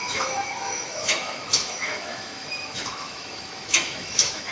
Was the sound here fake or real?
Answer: fake